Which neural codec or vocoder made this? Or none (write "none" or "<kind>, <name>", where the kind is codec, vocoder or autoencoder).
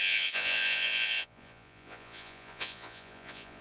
vocoder, Vocos